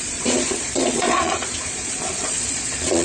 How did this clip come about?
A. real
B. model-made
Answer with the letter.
B